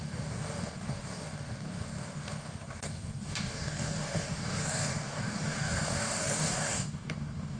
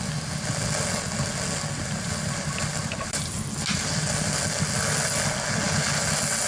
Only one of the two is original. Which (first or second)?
second